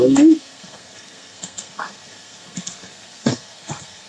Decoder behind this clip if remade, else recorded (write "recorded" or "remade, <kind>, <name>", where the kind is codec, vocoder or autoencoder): remade, codec, SNAC